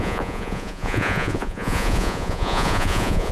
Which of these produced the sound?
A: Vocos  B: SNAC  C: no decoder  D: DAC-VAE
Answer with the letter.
A